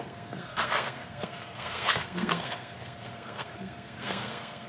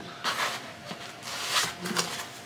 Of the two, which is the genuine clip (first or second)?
second